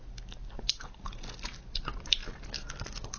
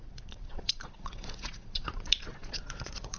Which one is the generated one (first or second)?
second